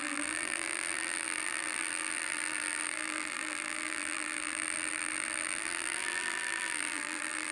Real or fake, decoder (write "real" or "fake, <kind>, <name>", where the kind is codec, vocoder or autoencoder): fake, vocoder, BigVGAN v2